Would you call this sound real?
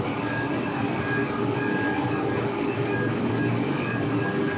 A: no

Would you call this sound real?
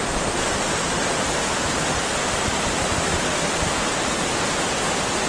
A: yes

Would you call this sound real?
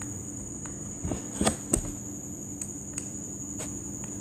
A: yes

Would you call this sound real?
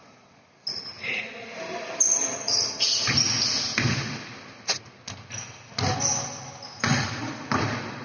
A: yes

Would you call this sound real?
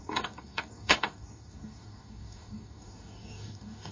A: no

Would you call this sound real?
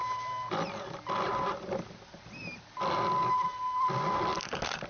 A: yes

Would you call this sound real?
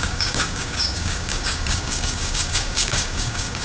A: no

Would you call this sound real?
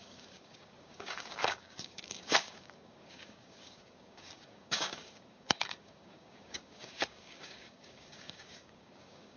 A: no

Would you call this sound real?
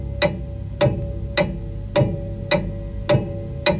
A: yes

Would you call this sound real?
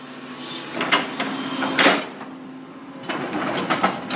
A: yes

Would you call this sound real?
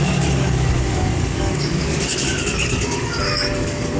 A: no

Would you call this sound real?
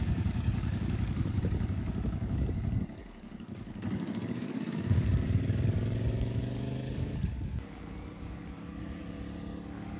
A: no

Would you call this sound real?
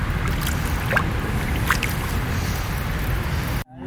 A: yes